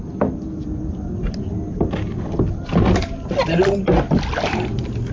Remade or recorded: recorded